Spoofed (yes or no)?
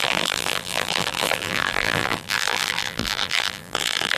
yes